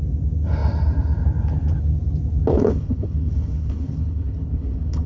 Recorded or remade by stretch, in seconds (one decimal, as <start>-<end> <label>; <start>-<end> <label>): 0.0-2.5 recorded; 2.5-5.1 remade